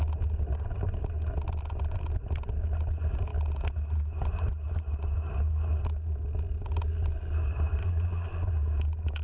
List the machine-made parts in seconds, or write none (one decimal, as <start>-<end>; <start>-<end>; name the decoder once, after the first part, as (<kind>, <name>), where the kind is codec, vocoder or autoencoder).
7.8-8.5 (vocoder, Vocos)

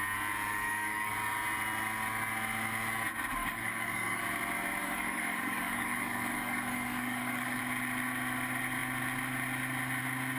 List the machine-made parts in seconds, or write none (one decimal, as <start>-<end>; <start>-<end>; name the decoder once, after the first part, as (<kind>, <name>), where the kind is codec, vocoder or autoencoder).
0.5-1.1 (codec, DAC); 3.4-4.2; 4.8-7.6